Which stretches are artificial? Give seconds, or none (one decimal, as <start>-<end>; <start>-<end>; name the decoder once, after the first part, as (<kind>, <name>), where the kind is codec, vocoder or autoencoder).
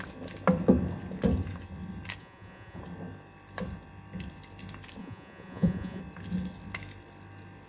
2.2-2.8 (vocoder, Vocos); 5.0-6.0